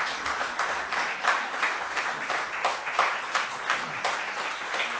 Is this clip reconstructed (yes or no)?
no